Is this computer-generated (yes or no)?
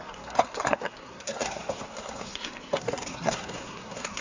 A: yes